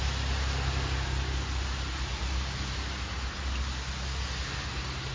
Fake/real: real